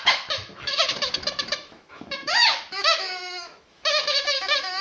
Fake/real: fake